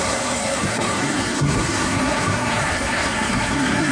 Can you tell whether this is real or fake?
fake